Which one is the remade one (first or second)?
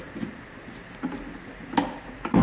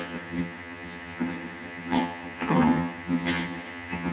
second